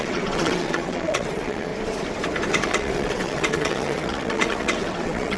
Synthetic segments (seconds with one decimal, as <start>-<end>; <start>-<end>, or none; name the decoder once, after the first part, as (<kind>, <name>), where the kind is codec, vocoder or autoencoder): 0.0-1.7 (vocoder, WaveNeXt); 2.5-5.4